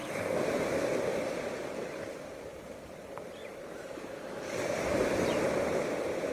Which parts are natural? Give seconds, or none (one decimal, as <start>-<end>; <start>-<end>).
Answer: 3.4-5.3